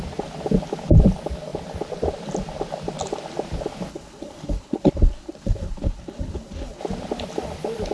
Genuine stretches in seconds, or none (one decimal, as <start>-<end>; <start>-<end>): 0.0-3.9; 6.8-7.9